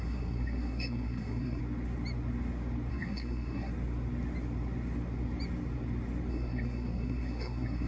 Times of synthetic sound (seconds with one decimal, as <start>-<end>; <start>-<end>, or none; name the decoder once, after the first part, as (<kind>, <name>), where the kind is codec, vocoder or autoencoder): 0.0-1.6 (codec, SNAC); 2.9-3.7; 6.3-7.9